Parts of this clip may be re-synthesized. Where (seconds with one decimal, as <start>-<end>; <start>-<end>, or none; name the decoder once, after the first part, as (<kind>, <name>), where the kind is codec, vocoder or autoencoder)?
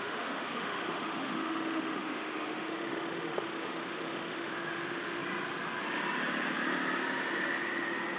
0.0-5.2 (autoencoder, DAC-VAE)